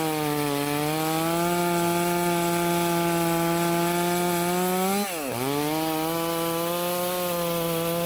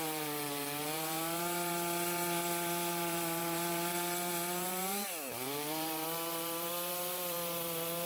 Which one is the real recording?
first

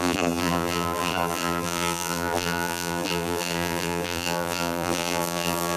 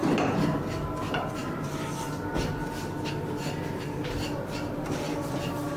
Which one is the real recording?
second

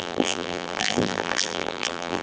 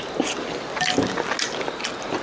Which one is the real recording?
second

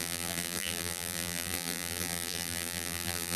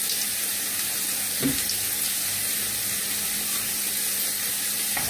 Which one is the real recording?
second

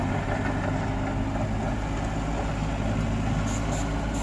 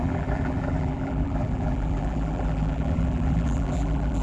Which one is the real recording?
first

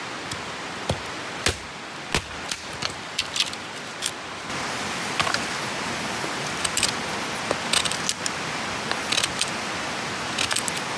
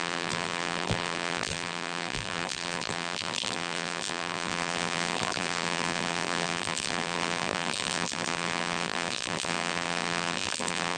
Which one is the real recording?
first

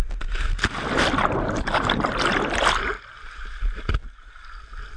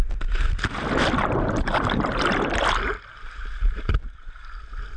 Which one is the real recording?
first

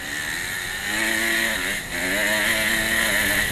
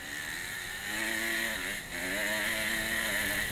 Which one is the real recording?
first